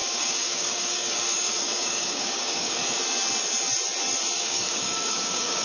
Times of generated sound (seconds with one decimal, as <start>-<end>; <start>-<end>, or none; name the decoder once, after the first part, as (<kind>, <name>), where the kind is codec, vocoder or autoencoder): 0.0-2.8 (codec, DAC); 4.4-5.6